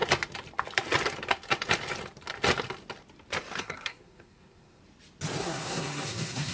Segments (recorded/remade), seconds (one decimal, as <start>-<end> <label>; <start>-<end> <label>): 0.0-3.6 recorded; 3.6-4.8 remade; 4.8-5.4 recorded; 5.4-6.5 remade